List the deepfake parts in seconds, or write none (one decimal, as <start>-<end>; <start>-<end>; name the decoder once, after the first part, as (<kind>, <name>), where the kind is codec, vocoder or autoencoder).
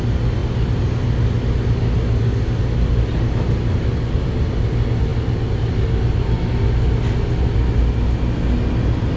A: none